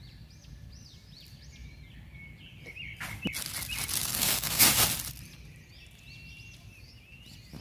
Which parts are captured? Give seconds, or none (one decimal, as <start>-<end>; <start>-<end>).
0.0-4.0; 4.7-7.6